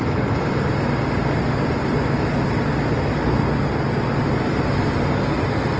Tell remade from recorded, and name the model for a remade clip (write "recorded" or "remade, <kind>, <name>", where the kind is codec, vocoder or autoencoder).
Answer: recorded